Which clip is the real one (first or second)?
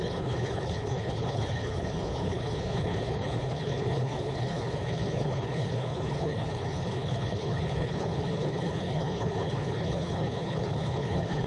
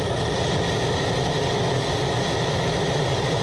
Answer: second